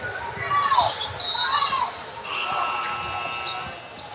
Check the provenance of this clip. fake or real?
real